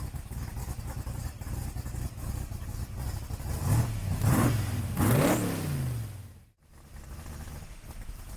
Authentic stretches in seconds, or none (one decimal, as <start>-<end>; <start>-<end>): 0.0-0.6; 2.1-4.0; 5.2-8.4